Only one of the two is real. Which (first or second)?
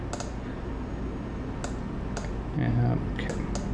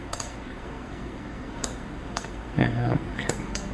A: first